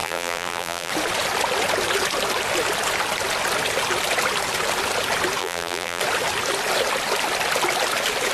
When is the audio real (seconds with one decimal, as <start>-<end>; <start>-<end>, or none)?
0.9-5.4; 6.0-8.3